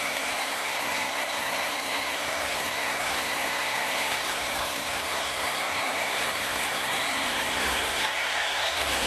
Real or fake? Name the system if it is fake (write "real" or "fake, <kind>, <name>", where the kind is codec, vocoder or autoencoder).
fake, codec, SNAC